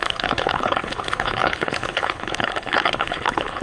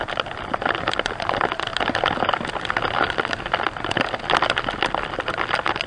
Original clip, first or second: second